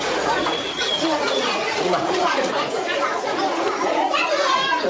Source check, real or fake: fake